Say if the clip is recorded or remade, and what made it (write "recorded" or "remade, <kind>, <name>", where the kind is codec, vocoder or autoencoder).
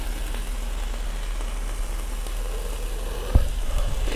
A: recorded